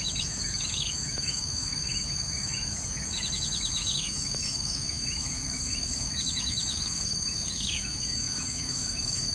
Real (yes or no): no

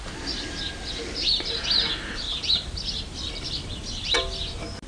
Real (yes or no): yes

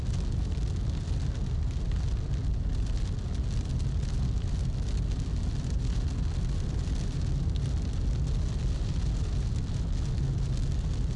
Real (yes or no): yes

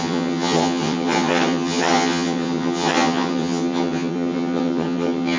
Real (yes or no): no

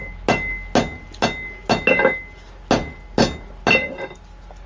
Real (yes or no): yes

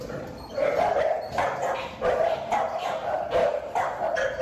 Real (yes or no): yes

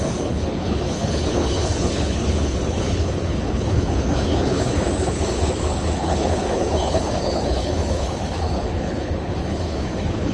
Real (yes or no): no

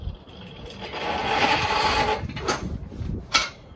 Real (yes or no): yes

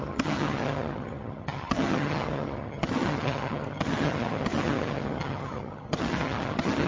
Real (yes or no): no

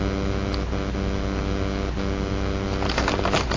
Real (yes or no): yes